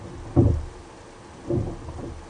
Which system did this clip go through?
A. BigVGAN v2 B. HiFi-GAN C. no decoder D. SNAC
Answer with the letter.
C